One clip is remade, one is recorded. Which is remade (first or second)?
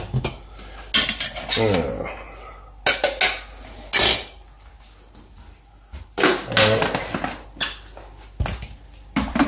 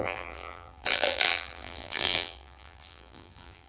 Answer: second